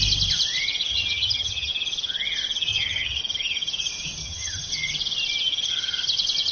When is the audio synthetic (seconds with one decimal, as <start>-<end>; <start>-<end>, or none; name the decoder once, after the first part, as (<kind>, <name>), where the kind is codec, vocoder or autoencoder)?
0.9-1.7 (vocoder, HiFi-GAN); 2.7-3.2; 4.2-4.7